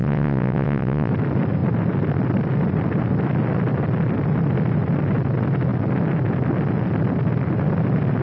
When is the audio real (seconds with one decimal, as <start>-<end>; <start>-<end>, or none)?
1.1-8.2